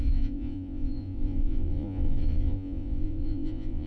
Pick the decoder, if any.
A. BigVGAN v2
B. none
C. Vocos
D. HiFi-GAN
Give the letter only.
C